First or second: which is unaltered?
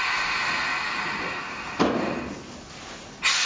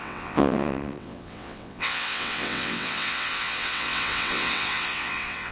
first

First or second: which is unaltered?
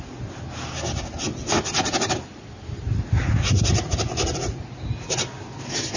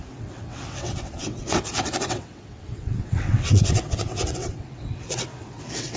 first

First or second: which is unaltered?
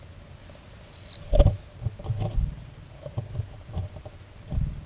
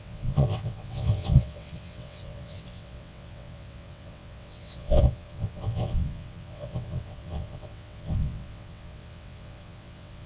first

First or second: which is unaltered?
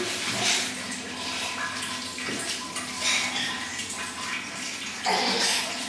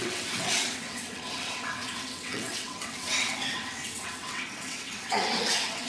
first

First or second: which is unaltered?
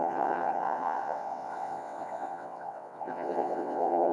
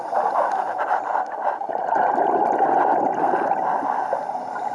second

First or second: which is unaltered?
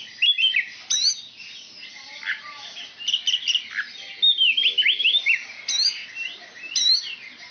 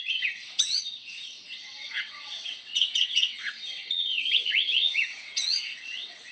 first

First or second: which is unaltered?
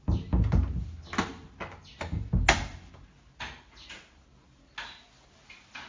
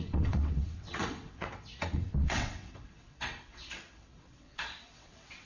first